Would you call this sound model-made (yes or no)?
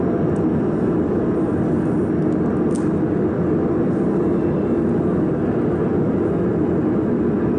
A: no